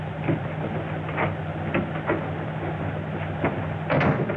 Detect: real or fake real